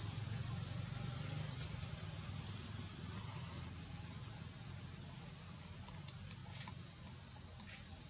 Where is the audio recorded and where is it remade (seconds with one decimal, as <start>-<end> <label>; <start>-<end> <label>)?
0.0-8.1 recorded